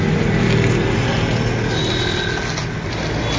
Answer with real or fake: real